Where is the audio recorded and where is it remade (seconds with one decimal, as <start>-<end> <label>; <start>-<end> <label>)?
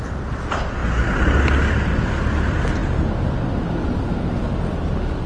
0.0-5.3 recorded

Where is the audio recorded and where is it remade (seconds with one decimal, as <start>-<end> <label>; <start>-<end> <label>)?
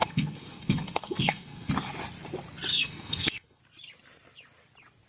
0.0-1.7 remade; 1.7-2.7 recorded; 2.7-3.6 remade; 3.6-5.1 recorded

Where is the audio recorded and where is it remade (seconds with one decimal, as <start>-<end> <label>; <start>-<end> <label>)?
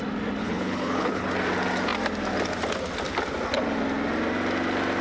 0.0-0.4 recorded; 0.4-1.3 remade; 1.3-5.0 recorded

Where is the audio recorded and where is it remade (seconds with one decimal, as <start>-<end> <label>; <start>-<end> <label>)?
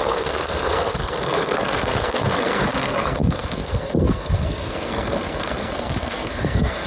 0.0-6.9 remade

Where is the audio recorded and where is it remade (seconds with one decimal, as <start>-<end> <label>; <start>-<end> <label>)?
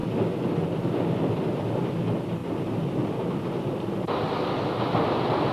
0.0-5.5 recorded